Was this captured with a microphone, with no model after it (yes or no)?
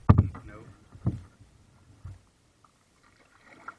yes